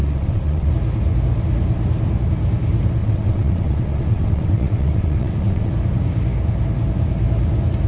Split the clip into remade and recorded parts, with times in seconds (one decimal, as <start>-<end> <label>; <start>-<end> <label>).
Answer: 0.0-0.7 remade; 0.7-3.0 recorded; 3.0-5.7 remade; 5.7-7.9 recorded